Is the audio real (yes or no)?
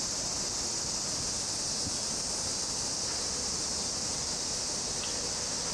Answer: yes